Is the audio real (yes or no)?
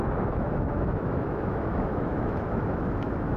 no